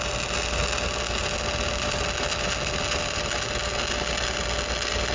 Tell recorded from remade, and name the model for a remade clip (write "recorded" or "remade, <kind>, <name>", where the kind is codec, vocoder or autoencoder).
recorded